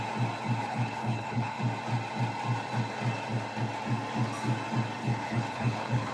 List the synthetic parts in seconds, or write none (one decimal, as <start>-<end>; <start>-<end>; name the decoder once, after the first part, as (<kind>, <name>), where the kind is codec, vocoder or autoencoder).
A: 0.6-1.6 (codec, HILCodec); 5.0-6.1